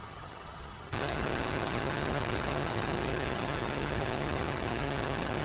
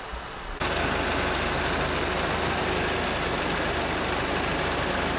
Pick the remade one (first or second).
first